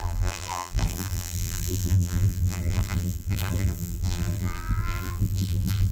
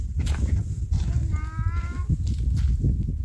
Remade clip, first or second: first